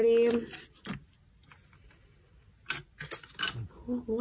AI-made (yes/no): no